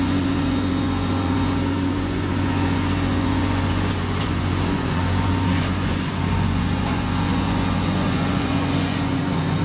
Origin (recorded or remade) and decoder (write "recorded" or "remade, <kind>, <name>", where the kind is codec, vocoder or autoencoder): remade, vocoder, Vocos